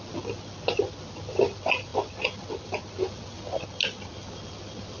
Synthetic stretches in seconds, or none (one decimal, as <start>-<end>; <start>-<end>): none